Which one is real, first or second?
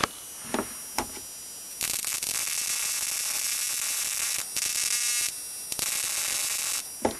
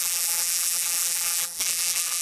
first